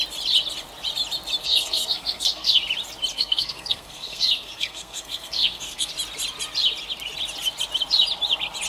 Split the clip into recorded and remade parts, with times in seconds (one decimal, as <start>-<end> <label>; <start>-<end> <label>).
0.0-1.4 recorded; 1.4-2.6 remade; 2.6-3.1 recorded; 3.1-5.9 remade; 5.9-8.7 recorded